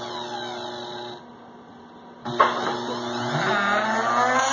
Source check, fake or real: real